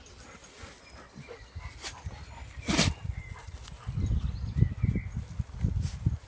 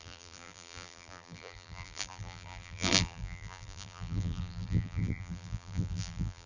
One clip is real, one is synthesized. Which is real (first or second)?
first